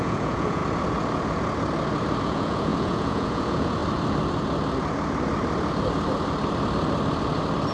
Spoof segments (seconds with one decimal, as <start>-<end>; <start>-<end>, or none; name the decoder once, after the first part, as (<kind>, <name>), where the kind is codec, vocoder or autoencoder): 0.0-0.6 (vocoder, Vocos); 2.2-3.8